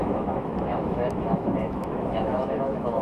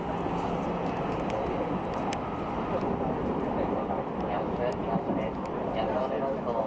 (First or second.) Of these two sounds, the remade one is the first